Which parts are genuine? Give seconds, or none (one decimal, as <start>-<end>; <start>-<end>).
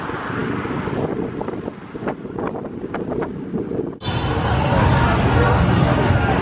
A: 0.0-6.4